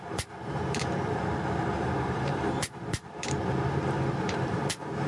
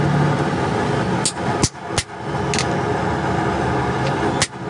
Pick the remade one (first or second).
first